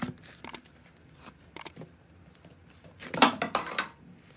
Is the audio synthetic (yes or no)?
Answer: no